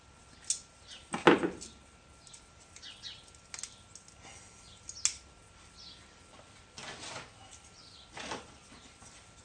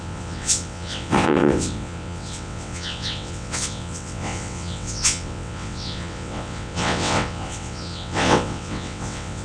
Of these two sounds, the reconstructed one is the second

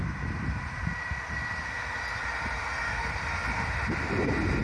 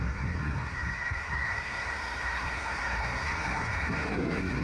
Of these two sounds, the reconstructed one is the second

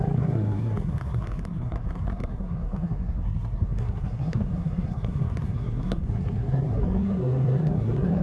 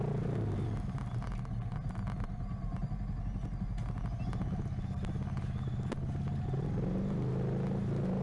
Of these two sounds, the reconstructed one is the first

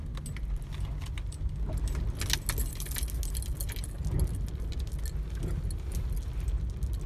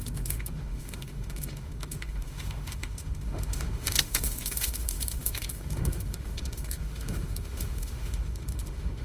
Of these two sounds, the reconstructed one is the second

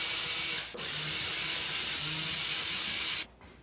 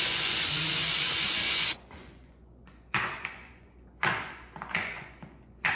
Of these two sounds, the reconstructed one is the second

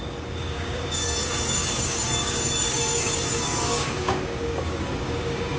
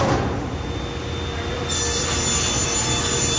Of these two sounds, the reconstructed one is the first